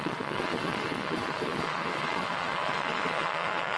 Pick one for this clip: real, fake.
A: fake